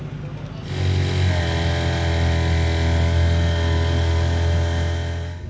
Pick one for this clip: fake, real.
real